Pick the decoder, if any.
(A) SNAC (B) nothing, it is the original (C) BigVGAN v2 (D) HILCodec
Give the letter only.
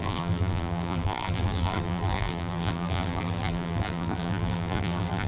C